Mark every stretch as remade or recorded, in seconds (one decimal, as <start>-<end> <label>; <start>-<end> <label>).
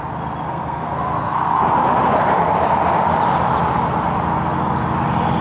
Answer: 0.0-0.5 recorded; 0.5-1.6 remade; 1.6-5.4 recorded